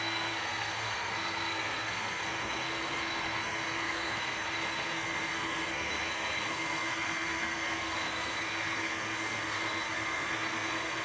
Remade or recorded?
remade